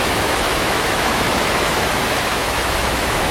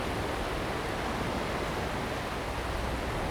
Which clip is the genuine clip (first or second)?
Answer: second